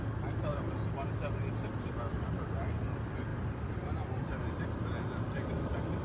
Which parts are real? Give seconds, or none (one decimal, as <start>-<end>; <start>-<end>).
0.0-3.3; 4.4-6.0